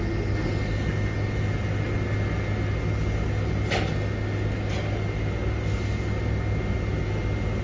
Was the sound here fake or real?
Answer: real